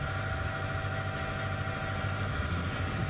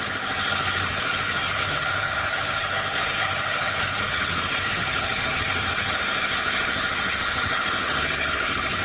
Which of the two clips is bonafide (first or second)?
first